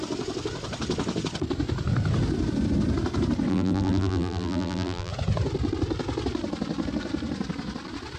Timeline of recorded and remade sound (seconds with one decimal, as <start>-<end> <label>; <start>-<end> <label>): 0.0-3.5 recorded; 3.5-5.1 remade; 5.1-8.2 recorded